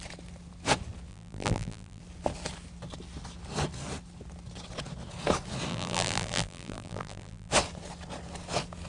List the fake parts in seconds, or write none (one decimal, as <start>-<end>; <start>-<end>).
1.1-2.0; 5.7-7.5